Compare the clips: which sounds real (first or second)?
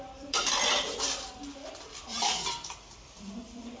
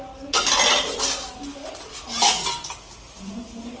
second